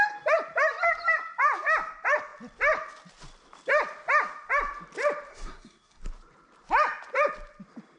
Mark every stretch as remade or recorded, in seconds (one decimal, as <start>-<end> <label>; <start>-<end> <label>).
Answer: 0.0-5.3 recorded; 5.3-6.0 remade; 6.0-8.0 recorded